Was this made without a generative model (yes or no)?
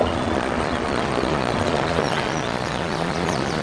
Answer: no